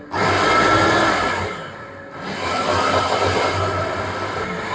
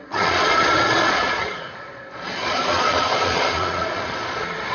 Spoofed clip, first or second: second